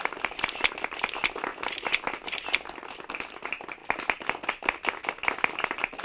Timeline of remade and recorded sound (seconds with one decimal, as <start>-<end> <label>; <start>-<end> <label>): 0.0-1.5 remade; 1.5-3.2 recorded; 3.2-3.8 remade; 3.8-5.4 recorded; 5.4-6.0 remade